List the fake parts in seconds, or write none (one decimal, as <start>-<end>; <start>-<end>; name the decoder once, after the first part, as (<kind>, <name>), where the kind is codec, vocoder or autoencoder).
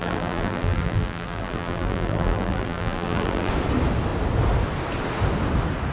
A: 0.0-3.5 (vocoder, BigVGAN v2)